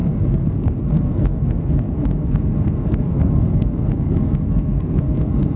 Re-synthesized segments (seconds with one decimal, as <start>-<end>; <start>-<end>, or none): 0.0-5.6